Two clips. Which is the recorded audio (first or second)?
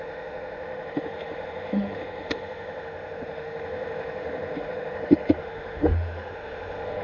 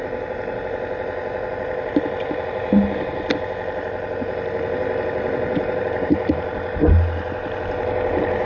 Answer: second